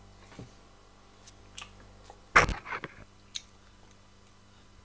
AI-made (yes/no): no